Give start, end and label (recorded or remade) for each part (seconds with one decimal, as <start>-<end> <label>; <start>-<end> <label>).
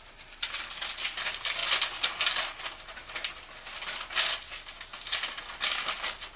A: 0.0-4.9 recorded; 4.9-5.4 remade; 5.4-6.4 recorded